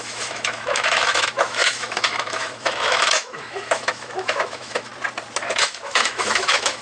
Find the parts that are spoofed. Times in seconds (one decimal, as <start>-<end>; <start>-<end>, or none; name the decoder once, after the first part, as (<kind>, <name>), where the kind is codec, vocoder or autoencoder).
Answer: 0.0-4.9 (autoencoder, DAC-VAE); 5.4-6.8